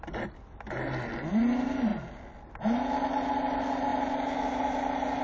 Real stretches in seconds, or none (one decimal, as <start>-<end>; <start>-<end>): 0.0-5.2